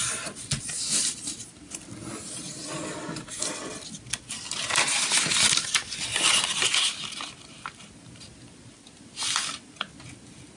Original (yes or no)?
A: yes